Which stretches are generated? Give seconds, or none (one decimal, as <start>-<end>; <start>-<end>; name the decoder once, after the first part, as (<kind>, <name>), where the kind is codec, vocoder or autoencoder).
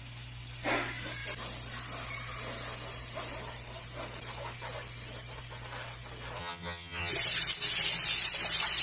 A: 6.4-7.1 (vocoder, HiFi-GAN)